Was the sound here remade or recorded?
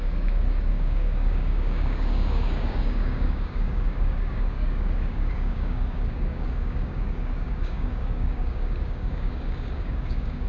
remade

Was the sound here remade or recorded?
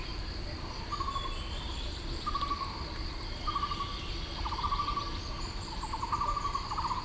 recorded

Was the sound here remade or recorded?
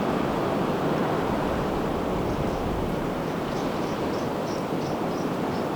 recorded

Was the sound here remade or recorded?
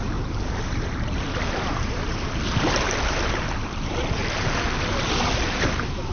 remade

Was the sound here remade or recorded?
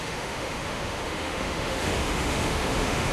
remade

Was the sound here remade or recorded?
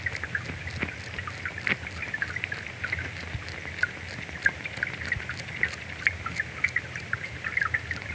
recorded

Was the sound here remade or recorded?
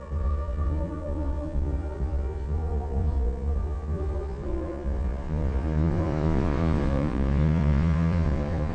remade